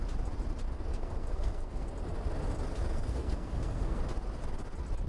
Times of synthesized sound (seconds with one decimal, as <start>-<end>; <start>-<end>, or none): 0.9-1.9; 2.9-4.0